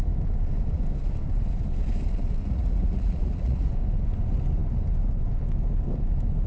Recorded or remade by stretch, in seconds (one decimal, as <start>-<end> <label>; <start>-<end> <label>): 0.0-2.4 recorded; 2.4-3.7 remade; 3.7-6.5 recorded